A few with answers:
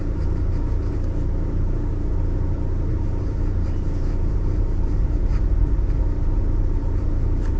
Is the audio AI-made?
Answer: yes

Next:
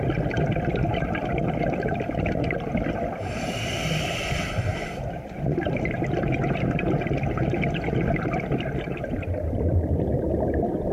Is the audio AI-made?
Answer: yes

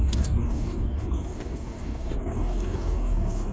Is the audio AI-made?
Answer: yes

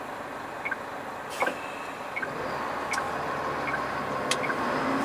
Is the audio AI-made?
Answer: no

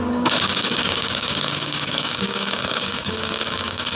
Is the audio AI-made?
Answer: yes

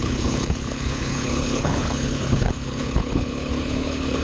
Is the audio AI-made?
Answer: yes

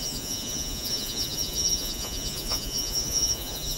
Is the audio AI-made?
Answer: yes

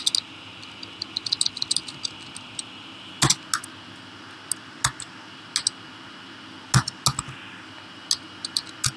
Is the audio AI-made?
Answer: no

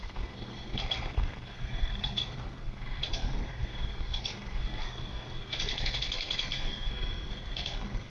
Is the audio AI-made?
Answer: yes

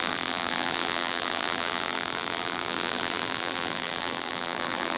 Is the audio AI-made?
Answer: yes